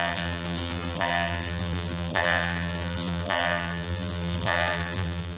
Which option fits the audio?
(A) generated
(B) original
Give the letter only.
A